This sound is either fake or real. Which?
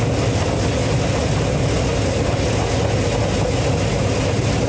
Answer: real